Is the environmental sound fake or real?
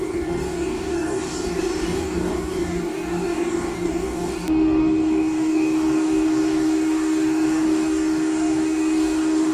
fake